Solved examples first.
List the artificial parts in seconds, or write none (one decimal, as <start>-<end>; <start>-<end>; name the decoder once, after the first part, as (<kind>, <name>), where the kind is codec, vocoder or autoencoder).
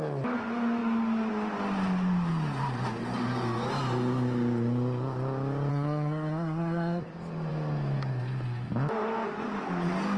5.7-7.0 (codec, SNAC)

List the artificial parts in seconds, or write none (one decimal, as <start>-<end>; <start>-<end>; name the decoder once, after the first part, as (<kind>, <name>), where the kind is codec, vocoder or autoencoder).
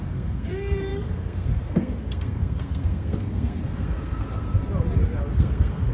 0.0-4.6 (codec, SNAC); 5.4-5.9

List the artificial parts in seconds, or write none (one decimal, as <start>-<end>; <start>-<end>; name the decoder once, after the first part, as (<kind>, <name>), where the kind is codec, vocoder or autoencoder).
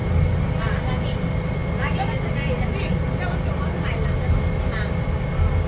none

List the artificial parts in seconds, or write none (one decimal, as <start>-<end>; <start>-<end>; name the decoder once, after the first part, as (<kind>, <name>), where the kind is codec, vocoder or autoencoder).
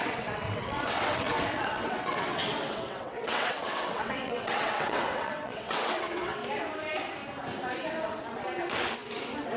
0.0-6.4 (vocoder, WaveNeXt)